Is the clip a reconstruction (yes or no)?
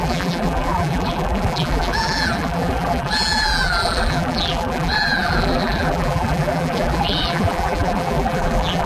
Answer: yes